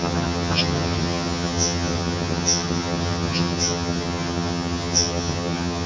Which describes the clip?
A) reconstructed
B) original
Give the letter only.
A